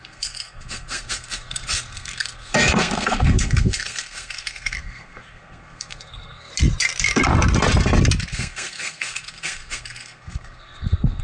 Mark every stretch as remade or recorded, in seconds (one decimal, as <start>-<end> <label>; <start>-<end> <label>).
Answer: 0.0-6.5 remade; 6.5-8.3 recorded; 8.3-11.2 remade